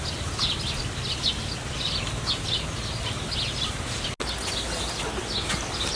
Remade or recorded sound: recorded